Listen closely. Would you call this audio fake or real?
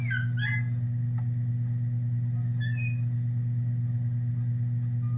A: real